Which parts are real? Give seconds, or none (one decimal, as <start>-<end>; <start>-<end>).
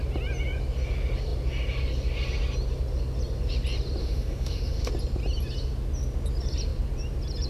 0.0-4.0; 4.9-7.5